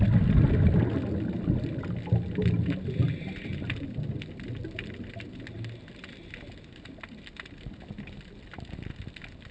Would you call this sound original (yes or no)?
yes